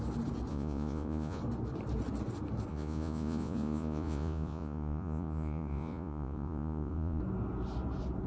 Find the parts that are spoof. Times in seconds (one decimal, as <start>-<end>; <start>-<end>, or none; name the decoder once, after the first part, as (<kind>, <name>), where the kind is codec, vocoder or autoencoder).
0.5-1.4 (vocoder, Vocos); 2.7-7.2